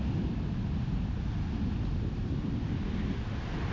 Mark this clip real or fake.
real